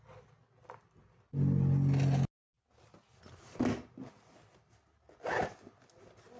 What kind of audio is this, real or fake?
real